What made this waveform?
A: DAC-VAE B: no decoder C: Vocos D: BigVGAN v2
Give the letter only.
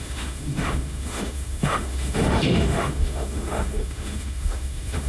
A